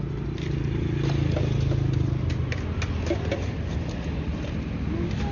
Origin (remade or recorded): recorded